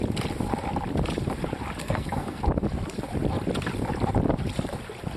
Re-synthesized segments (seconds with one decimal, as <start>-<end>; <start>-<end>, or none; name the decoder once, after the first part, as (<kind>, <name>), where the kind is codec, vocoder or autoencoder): 1.8-2.4 (codec, SNAC)